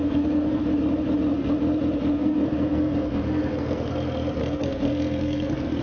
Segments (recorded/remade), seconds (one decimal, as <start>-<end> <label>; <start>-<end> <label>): 0.0-0.6 remade; 0.6-2.2 recorded; 2.2-3.9 remade; 3.9-4.4 recorded; 4.4-5.8 remade